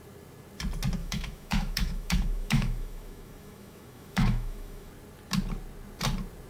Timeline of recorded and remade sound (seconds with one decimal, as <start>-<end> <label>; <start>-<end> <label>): 0.0-1.0 recorded; 1.0-4.9 remade; 4.9-6.5 recorded